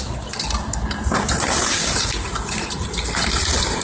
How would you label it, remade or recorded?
recorded